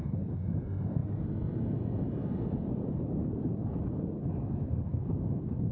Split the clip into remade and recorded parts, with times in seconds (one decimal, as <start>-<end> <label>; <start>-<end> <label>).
0.0-5.7 recorded